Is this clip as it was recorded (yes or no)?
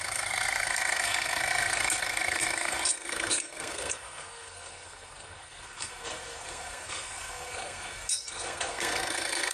no